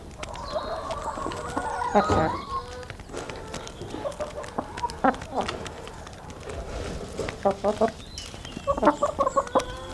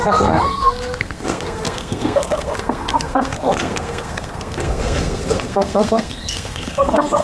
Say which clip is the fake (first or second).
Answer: second